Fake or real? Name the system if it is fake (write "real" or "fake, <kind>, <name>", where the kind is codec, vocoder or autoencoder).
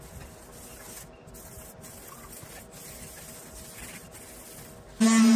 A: real